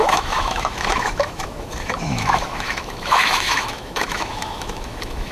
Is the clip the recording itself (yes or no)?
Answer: no